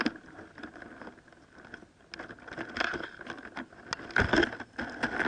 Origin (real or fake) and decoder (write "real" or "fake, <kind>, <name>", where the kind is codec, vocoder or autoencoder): real